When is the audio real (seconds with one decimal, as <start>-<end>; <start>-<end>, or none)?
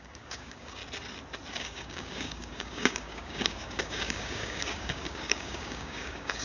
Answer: 0.8-1.5